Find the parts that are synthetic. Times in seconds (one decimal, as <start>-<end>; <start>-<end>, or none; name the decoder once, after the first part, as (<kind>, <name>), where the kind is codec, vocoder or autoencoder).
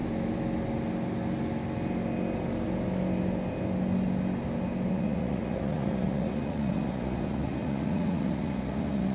4.9-9.1 (vocoder, Vocos)